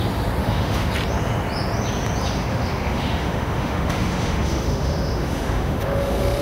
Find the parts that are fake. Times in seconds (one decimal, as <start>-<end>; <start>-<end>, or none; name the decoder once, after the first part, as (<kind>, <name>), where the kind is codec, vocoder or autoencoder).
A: 0.4-0.9 (autoencoder, DAC-VAE); 2.5-6.4